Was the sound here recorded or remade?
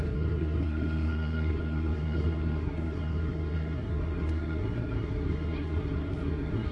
remade